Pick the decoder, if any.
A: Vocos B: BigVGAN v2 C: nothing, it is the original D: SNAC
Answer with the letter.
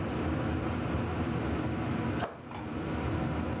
C